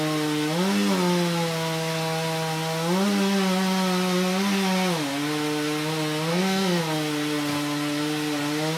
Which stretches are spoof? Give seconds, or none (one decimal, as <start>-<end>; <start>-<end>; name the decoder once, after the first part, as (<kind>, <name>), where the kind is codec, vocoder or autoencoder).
6.3-6.8 (codec, SNAC)